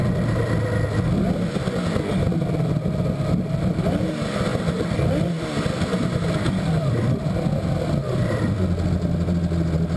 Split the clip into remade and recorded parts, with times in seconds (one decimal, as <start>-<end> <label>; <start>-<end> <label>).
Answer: 0.0-4.5 recorded; 4.5-7.4 remade; 7.4-8.0 recorded; 8.0-8.6 remade; 8.6-10.0 recorded